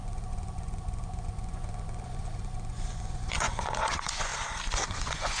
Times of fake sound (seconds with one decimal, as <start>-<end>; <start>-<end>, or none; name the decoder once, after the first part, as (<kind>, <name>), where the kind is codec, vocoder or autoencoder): 0.0-4.3 (vocoder, Vocos); 4.9-5.4